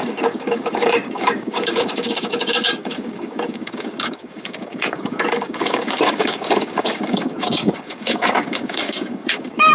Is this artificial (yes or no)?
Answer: yes